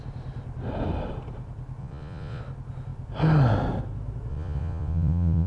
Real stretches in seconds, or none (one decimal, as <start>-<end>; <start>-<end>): 0.0-1.8; 2.4-4.3